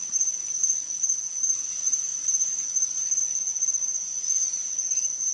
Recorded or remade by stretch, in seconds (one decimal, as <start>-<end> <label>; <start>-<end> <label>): 0.0-5.3 recorded